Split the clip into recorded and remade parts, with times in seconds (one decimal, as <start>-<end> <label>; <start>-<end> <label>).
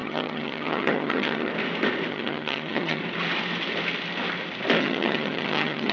0.0-1.5 remade; 1.5-2.1 recorded; 2.1-3.0 remade; 3.0-4.8 recorded; 4.8-5.9 remade